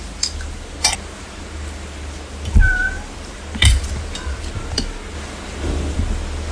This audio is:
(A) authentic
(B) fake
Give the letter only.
A